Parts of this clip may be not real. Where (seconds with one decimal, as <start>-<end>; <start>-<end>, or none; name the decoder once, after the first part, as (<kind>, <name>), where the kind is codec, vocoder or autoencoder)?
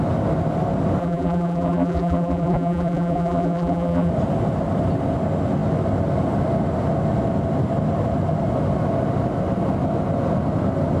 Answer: 1.0-4.1 (vocoder, BigVGAN v2)